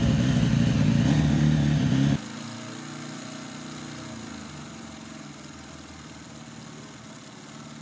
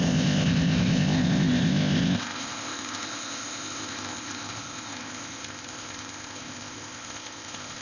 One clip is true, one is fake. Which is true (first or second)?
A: first